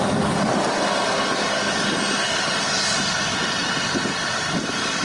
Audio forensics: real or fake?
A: real